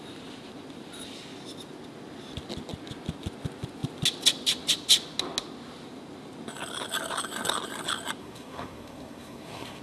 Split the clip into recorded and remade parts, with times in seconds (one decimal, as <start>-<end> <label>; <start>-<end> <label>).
0.0-8.2 recorded; 8.2-9.8 remade